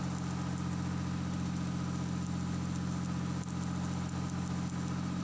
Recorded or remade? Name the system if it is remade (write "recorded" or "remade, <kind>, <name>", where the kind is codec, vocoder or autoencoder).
recorded